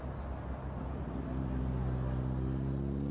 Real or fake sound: real